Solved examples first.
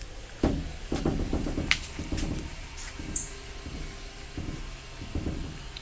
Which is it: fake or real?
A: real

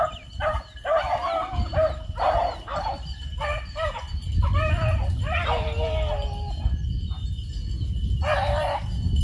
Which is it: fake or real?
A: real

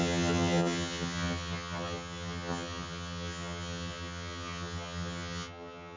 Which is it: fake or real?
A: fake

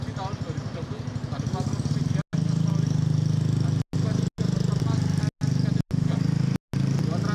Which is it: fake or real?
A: real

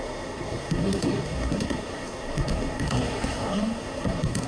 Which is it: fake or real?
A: fake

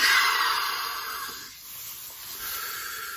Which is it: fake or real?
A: real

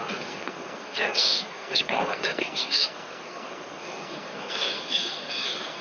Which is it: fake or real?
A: fake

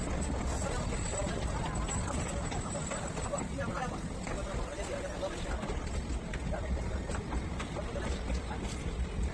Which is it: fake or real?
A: real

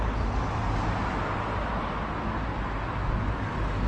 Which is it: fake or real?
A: real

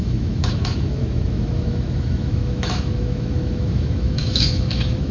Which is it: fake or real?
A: fake